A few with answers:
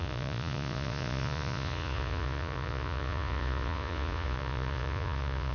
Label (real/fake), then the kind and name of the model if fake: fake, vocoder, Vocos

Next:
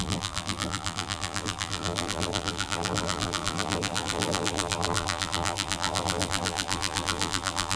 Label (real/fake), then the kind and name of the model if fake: fake, vocoder, BigVGAN v2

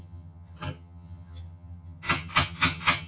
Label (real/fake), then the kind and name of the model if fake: fake, vocoder, HiFi-GAN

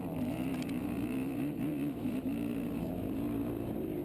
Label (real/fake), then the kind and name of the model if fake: fake, vocoder, BigVGAN v2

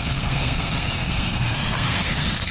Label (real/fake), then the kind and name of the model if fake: fake, codec, SNAC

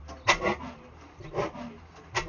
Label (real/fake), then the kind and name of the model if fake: real